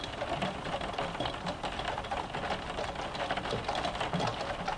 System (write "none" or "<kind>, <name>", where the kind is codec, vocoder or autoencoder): none